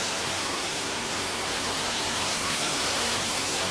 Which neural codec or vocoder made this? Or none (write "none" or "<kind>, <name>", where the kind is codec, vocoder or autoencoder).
codec, SNAC